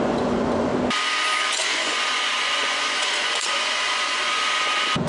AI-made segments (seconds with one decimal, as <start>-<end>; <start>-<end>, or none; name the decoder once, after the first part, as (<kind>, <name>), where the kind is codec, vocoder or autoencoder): 0.0-0.7 (vocoder, Vocos); 1.5-5.1